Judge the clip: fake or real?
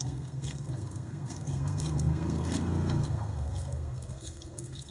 fake